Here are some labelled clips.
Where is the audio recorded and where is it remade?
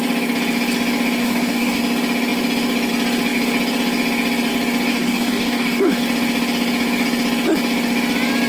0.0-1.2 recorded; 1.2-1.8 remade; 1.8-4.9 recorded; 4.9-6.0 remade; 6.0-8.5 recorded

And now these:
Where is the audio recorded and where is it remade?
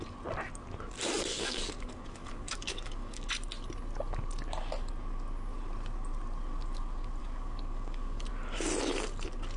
0.0-1.3 recorded; 1.3-3.3 remade; 3.3-7.2 recorded; 7.2-8.3 remade; 8.3-9.6 recorded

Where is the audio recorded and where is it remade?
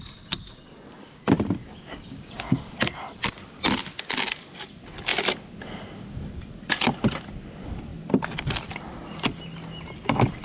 0.0-1.6 recorded; 1.6-2.8 remade; 2.8-10.4 recorded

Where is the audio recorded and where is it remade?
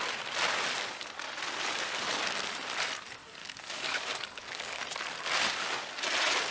0.0-3.4 recorded; 3.4-4.8 remade; 4.8-6.5 recorded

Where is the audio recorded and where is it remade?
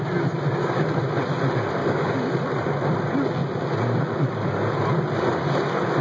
0.0-1.8 recorded; 1.8-2.3 remade; 2.3-6.0 recorded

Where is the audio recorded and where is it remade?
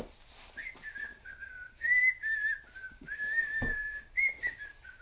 0.0-1.1 recorded; 1.1-2.1 remade; 2.1-2.8 recorded; 2.8-4.6 remade; 4.6-5.0 recorded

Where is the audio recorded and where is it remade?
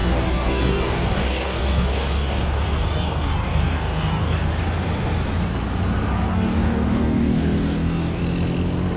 0.0-4.5 remade; 4.5-6.3 recorded; 6.3-8.2 remade; 8.2-9.0 recorded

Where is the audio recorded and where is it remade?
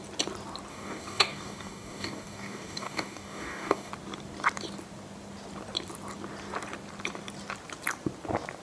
0.0-0.7 recorded; 0.7-3.9 remade; 3.9-8.6 recorded